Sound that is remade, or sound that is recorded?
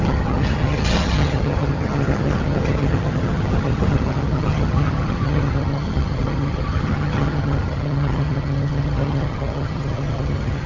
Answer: remade